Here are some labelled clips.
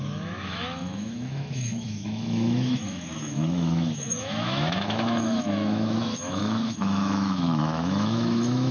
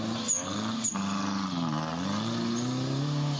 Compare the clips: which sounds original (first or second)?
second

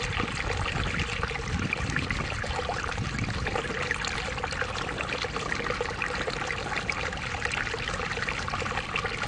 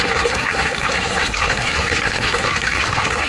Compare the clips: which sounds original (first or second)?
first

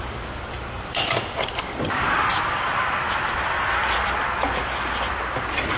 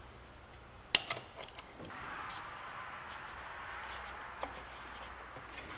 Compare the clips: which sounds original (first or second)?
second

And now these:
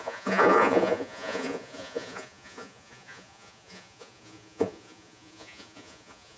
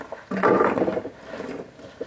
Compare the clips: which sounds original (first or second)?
second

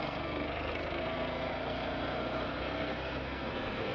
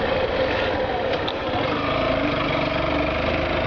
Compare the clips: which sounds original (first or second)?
second